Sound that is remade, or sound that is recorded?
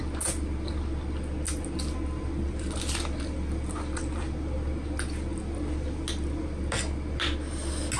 recorded